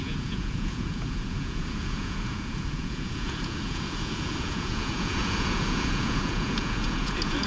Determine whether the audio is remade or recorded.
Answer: remade